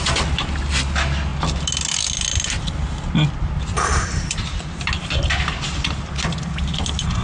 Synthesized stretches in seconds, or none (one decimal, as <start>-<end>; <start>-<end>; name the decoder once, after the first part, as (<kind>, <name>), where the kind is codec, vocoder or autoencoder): none